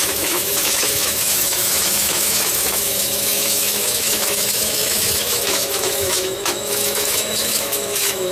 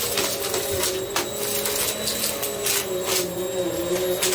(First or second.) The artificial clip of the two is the first